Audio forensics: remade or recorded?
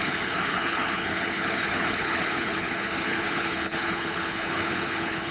remade